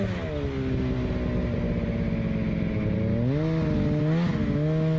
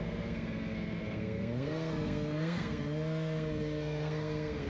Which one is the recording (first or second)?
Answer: first